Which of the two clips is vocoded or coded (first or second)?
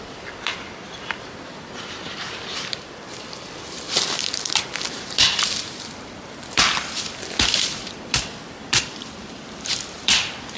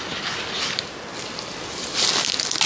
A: first